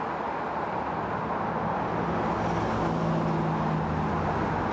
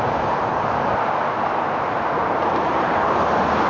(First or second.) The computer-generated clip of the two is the second